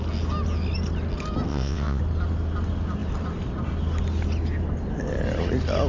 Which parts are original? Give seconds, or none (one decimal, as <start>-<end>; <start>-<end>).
0.0-1.5; 2.0-5.9